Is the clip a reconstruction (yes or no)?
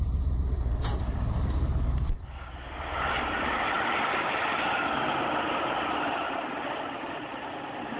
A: yes